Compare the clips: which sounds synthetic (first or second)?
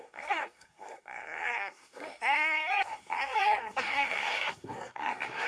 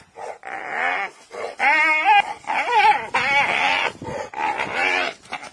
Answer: first